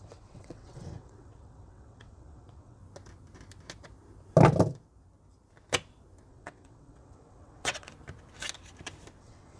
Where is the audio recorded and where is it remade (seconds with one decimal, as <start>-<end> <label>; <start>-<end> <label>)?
0.0-2.8 remade; 2.8-6.3 recorded; 6.3-7.9 remade; 7.9-9.2 recorded; 9.2-9.6 remade